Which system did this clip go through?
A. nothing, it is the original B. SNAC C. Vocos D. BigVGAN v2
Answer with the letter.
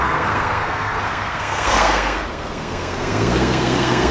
B